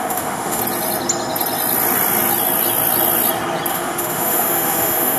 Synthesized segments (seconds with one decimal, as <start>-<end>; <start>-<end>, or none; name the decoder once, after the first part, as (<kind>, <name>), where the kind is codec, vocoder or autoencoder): 0.0-0.6 (autoencoder, DAC-VAE); 3.7-5.2